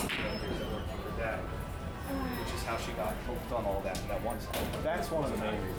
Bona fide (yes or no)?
yes